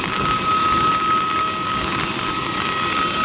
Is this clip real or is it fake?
real